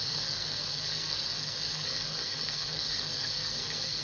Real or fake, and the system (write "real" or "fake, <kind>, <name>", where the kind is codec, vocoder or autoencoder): fake, codec, SNAC